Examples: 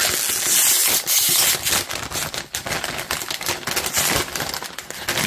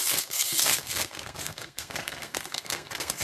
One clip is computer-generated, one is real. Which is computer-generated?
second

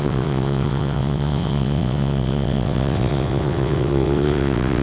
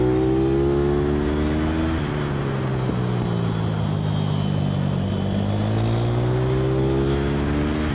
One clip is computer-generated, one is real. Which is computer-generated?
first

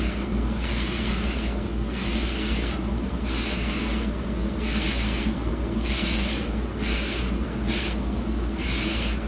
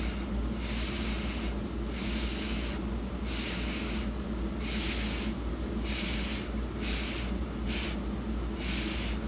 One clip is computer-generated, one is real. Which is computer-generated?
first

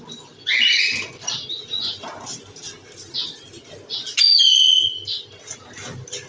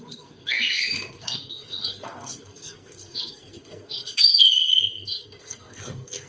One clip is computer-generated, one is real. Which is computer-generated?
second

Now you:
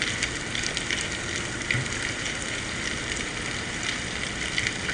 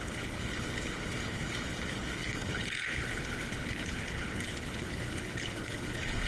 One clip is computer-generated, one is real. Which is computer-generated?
second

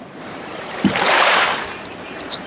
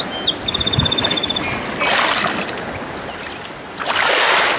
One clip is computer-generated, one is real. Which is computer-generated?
first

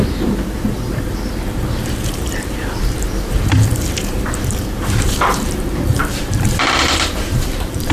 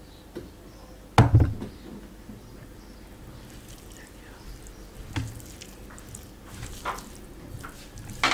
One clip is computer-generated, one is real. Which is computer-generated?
first